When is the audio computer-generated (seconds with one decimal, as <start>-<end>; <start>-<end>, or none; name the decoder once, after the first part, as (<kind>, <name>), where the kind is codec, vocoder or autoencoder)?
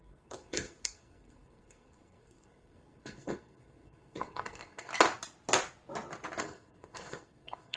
0.0-4.9 (codec, SNAC); 6.4-7.8